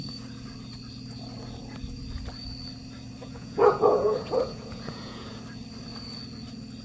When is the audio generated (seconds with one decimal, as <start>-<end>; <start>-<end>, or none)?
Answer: 3.2-5.4